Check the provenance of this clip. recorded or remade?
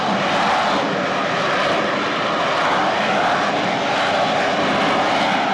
recorded